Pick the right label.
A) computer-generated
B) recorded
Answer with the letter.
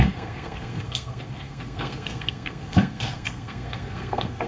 A